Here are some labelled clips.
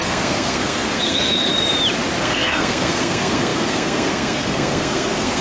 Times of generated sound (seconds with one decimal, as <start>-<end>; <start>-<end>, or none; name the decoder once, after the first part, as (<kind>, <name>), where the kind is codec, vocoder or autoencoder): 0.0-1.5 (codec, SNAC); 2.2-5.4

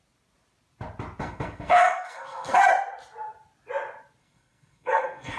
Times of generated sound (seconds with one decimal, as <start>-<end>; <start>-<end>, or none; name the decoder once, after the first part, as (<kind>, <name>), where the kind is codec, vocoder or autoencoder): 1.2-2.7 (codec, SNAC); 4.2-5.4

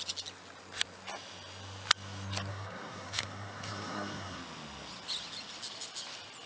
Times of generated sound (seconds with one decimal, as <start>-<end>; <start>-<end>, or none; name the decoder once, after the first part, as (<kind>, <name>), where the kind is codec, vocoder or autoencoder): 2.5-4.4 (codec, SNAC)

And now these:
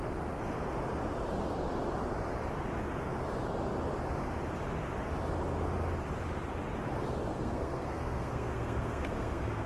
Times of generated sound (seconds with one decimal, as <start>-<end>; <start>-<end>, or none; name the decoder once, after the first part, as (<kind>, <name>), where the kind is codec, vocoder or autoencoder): 7.3-9.7 (codec, SNAC)

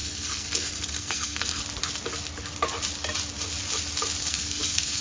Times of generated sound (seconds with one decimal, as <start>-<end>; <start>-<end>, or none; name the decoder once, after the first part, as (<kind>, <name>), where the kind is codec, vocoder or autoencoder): 0.0-1.6 (codec, SNAC); 4.3-5.0